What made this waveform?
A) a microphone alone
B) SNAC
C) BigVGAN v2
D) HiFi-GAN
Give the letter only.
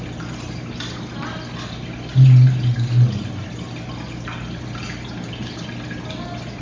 A